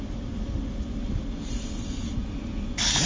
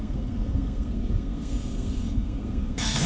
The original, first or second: first